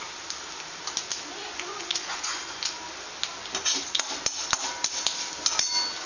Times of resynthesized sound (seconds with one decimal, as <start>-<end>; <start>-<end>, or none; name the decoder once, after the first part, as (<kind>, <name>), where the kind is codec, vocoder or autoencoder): 1.4-2.6 (vocoder, Vocos)